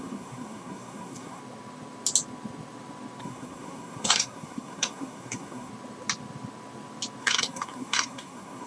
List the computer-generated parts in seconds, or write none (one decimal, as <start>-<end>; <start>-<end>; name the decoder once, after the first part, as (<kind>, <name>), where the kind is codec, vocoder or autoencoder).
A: 0.0-1.4 (codec, SNAC); 3.2-5.7; 7.2-8.7